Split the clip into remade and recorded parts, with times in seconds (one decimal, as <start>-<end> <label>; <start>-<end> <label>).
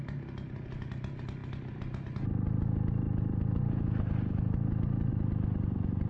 0.0-6.1 recorded